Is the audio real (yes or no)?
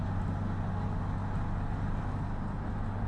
yes